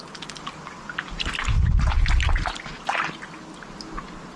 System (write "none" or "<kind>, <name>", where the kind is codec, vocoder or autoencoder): none